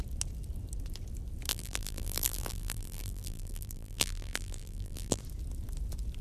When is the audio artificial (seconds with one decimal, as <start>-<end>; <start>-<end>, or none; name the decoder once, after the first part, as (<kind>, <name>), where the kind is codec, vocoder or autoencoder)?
1.5-5.2 (vocoder, BigVGAN v2)